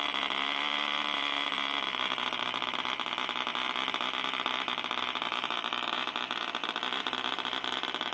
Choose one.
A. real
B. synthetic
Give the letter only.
B